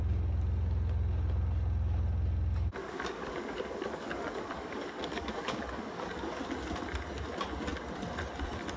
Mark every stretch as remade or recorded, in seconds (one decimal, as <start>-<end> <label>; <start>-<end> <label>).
0.0-2.8 recorded; 2.8-6.4 remade; 6.4-8.8 recorded